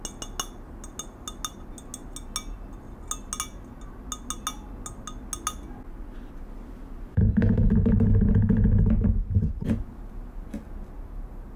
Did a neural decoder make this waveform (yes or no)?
no